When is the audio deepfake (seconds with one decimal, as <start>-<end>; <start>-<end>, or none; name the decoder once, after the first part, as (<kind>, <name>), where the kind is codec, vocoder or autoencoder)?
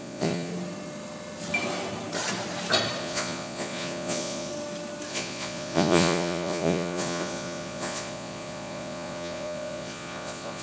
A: 0.0-0.5 (vocoder, Vocos); 3.0-4.5; 5.1-10.6